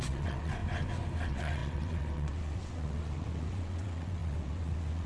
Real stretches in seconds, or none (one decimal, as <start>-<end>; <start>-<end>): 0.6-1.2